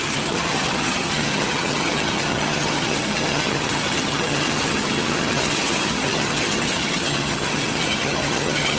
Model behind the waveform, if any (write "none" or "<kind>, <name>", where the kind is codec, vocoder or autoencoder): vocoder, HiFi-GAN